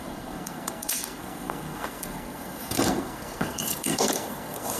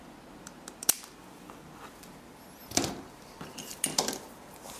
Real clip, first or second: second